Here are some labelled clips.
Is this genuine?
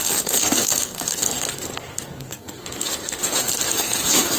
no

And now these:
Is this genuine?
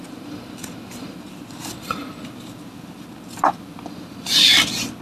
yes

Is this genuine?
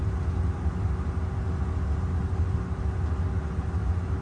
yes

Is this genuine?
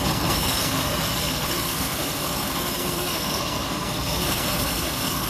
no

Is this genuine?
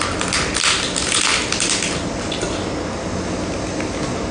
yes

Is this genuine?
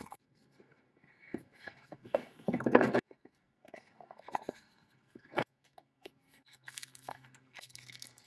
no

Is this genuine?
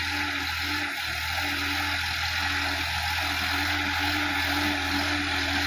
yes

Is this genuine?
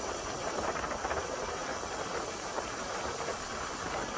yes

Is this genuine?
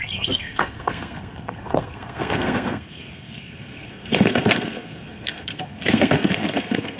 no